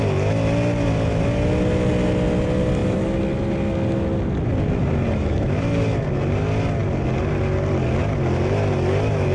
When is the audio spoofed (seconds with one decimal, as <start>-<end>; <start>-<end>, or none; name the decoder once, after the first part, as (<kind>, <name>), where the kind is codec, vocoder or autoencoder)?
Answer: none